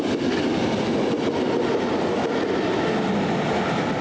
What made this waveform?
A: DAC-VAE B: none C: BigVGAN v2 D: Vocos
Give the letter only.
B